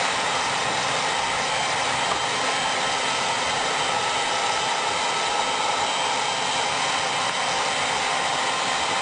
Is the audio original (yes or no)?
yes